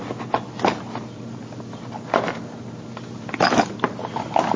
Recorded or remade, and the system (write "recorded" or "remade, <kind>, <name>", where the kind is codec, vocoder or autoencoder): recorded